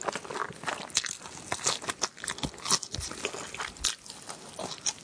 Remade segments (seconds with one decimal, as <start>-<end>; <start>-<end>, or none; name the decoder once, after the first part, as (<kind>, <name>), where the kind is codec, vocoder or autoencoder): none